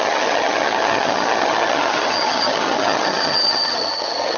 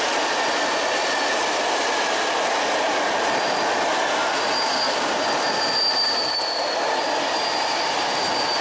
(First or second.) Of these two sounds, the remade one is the first